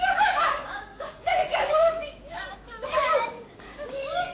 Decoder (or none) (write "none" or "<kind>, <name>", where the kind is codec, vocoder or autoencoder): codec, DAC